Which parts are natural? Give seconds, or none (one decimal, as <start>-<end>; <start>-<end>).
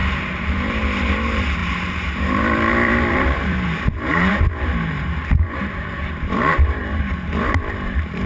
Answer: none